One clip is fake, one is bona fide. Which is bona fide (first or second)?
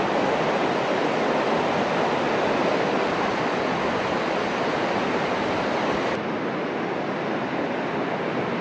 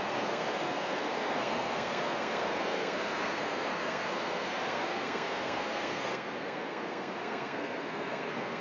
first